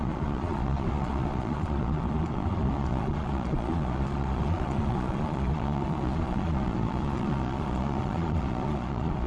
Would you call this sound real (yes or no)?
no